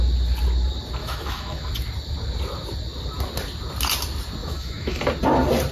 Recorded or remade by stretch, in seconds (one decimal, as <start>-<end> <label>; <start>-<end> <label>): 0.0-1.0 recorded; 1.0-1.7 remade; 1.7-4.4 recorded; 4.4-5.0 remade; 5.0-5.7 recorded